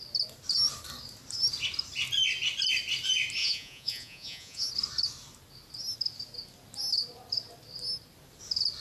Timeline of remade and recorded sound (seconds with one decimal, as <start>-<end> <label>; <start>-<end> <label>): 0.0-3.4 recorded; 3.4-4.7 remade; 4.7-8.8 recorded